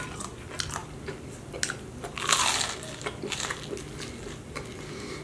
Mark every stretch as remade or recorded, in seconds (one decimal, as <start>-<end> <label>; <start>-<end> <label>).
0.0-5.2 recorded